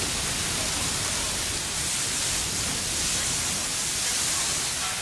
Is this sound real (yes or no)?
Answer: yes